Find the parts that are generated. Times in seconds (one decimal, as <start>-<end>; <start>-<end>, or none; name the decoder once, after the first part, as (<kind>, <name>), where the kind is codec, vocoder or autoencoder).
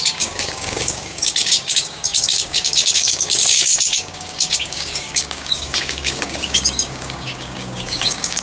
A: 0.0-8.4 (codec, DAC)